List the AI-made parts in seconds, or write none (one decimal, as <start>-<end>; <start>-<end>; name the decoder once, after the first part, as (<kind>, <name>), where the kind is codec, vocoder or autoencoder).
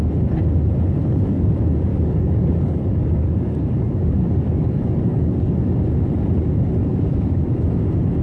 1.0-1.5 (codec, DAC); 1.9-5.7; 6.9-7.7